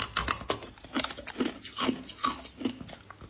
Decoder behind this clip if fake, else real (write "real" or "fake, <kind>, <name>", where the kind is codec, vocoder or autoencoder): real